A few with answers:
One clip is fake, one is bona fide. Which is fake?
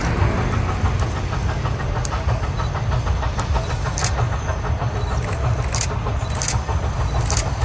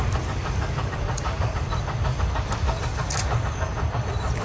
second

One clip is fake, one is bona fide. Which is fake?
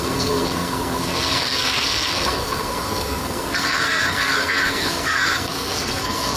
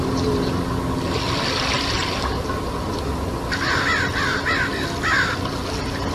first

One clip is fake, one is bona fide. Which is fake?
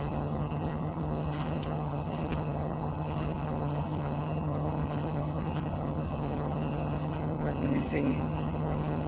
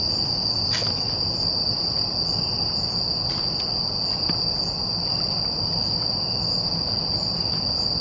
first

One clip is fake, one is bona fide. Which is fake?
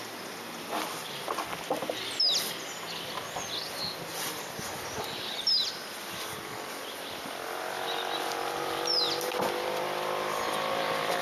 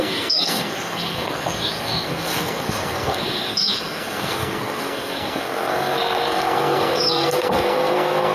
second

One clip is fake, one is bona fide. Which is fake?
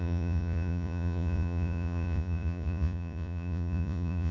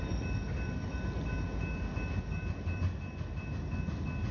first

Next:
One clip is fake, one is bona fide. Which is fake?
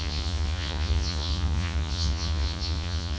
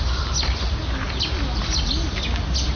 first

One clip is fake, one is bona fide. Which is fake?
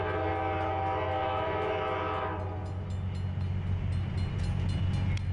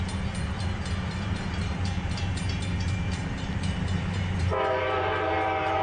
second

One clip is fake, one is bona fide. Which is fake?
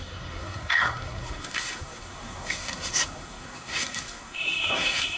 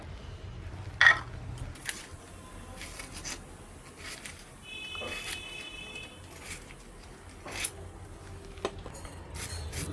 first